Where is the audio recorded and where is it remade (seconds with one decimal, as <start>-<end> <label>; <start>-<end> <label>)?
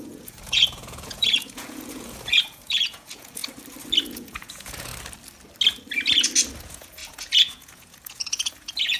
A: 0.0-3.4 remade; 3.4-4.0 recorded; 4.0-4.9 remade; 4.9-6.6 recorded; 6.6-9.0 remade